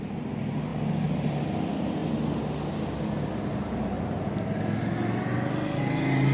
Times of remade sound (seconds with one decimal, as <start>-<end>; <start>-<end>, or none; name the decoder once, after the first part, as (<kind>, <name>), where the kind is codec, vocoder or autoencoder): none